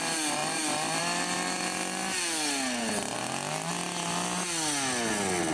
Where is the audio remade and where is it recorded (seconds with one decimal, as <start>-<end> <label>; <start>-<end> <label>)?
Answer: 0.0-5.5 recorded